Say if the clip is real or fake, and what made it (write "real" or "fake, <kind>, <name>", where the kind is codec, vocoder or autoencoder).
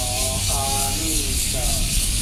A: fake, codec, DAC